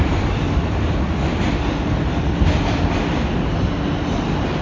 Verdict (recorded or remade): recorded